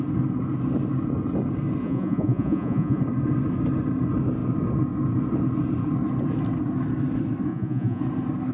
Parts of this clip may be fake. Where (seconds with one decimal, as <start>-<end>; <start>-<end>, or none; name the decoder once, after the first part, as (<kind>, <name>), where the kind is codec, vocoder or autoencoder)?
1.8-3.0 (vocoder, Vocos); 7.5-8.0